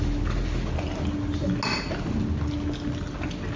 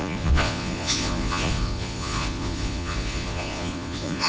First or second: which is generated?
second